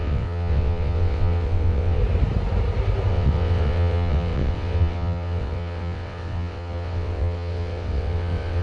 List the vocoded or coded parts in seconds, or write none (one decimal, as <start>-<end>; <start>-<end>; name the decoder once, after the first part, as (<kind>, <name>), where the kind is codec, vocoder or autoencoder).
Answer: 0.0-2.0 (vocoder, WaveNeXt); 3.1-8.6